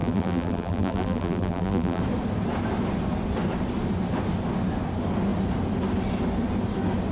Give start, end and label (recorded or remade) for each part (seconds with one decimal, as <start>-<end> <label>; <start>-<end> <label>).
0.0-2.0 remade; 2.0-7.1 recorded

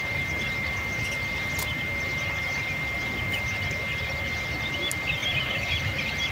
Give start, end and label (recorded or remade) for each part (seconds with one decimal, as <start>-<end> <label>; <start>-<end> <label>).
0.0-5.2 recorded; 5.2-6.3 remade

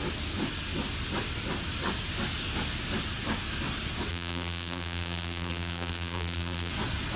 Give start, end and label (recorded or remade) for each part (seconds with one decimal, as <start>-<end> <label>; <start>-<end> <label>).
0.0-4.1 recorded; 4.1-6.7 remade; 6.7-7.2 recorded

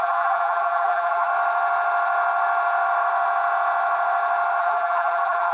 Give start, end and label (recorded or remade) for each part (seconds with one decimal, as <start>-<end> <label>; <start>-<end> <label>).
0.0-1.3 remade; 1.3-4.6 recorded; 4.6-5.5 remade

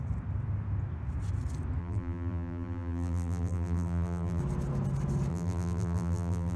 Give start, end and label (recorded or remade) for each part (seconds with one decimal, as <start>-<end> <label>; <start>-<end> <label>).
0.0-1.8 recorded; 1.8-4.4 remade; 4.4-5.3 recorded; 5.3-6.6 remade

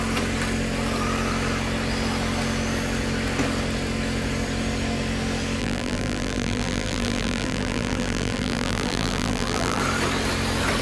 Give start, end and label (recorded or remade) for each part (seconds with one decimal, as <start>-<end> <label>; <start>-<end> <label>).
0.0-5.6 recorded; 5.6-9.8 remade; 9.8-10.8 recorded